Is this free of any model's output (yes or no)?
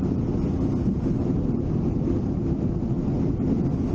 yes